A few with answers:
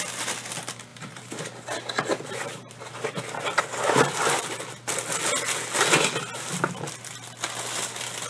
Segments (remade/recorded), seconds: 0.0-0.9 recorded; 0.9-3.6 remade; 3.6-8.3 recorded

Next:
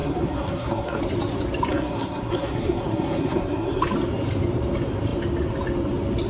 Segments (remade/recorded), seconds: 0.0-1.0 remade; 1.0-1.7 recorded; 1.7-3.8 remade; 3.8-6.3 recorded

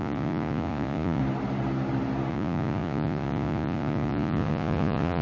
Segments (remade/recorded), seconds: 0.0-1.2 remade; 1.2-2.3 recorded; 2.3-5.2 remade

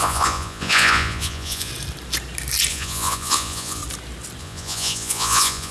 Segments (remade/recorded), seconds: 0.0-1.7 remade; 1.7-2.7 recorded; 2.7-3.8 remade; 3.8-4.4 recorded; 4.4-5.7 remade

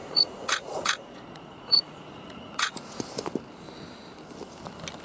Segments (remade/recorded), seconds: 0.0-3.0 remade; 3.0-5.0 recorded